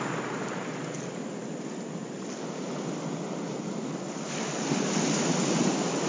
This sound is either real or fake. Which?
real